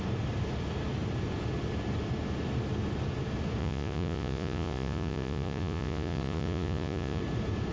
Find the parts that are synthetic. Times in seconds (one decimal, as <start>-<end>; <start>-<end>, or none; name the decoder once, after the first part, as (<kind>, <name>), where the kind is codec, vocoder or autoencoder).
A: 3.6-7.2 (vocoder, Vocos)